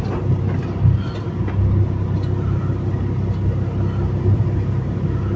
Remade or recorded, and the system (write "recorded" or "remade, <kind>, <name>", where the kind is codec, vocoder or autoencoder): recorded